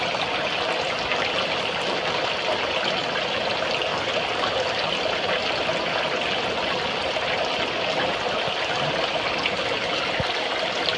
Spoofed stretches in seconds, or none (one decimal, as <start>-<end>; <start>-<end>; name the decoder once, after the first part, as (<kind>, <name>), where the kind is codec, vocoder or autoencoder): none